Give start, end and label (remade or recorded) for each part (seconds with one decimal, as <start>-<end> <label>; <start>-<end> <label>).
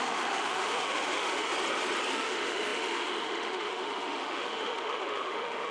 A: 0.0-1.5 remade; 1.5-2.1 recorded; 2.1-5.7 remade